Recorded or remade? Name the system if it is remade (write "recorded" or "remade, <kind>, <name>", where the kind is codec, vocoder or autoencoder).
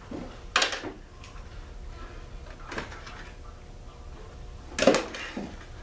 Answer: recorded